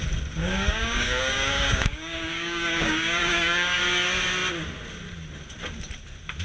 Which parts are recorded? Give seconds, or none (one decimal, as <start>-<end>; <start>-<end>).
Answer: 0.0-0.4; 3.8-6.4